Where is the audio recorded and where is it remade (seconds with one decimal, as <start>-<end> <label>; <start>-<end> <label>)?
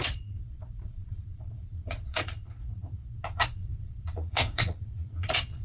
0.0-5.6 remade